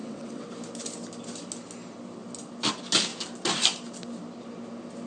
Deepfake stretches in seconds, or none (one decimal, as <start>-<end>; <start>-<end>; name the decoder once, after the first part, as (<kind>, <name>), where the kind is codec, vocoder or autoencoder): 0.0-0.5 (vocoder, WaveNeXt)